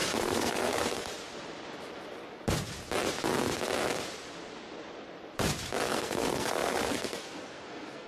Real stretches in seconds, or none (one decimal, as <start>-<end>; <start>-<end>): 1.1-5.9